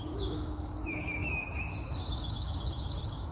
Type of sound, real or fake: fake